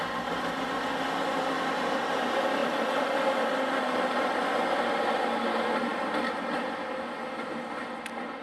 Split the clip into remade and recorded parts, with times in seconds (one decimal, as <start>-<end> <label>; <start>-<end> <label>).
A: 0.0-2.6 recorded; 2.6-3.9 remade; 3.9-8.4 recorded